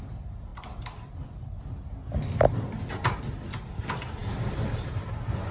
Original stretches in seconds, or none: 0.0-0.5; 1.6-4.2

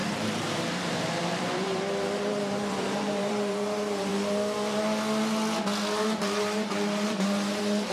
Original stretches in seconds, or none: 4.1-6.0

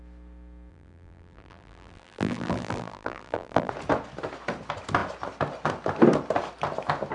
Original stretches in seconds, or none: 0.0-0.7; 3.7-7.1

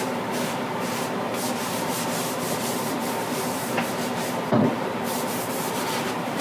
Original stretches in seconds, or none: 1.3-1.9

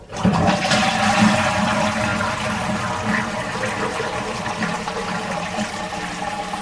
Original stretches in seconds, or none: 2.1-4.2